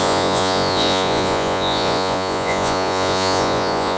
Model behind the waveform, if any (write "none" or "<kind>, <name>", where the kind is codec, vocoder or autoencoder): vocoder, Vocos